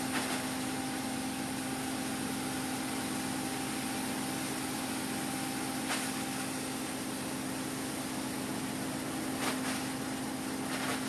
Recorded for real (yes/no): yes